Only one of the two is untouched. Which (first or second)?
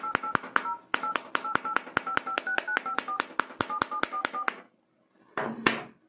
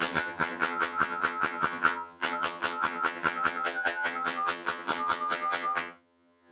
first